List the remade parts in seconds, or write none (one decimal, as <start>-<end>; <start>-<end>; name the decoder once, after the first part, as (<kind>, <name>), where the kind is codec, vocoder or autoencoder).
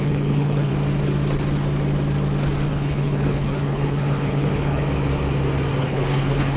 0.0-0.7 (codec, HILCodec); 2.7-4.8; 5.8-6.6